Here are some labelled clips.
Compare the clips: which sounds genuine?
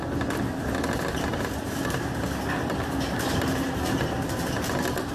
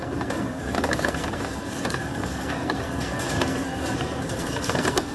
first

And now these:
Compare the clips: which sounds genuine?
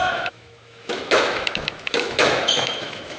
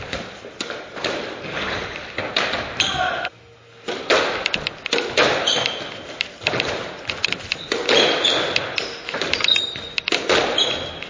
second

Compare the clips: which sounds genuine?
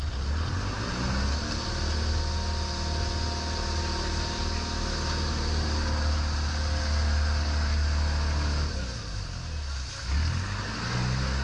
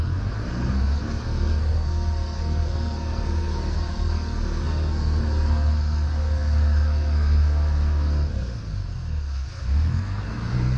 first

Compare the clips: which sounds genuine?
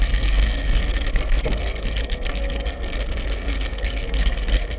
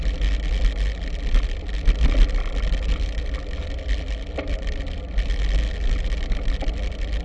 second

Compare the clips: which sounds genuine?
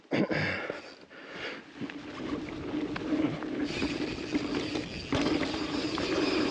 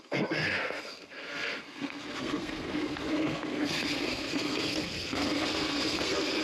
first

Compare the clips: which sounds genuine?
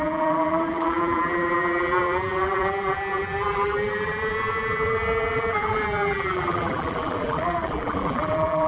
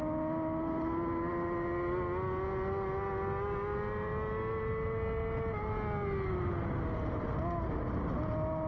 second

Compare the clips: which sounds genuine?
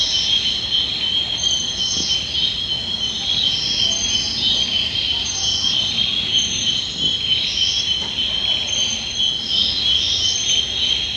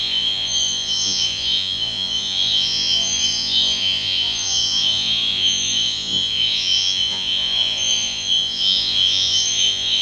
first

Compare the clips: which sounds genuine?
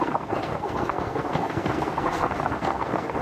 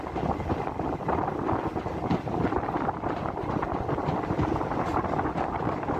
second